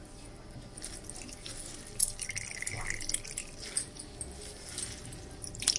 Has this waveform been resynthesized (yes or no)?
no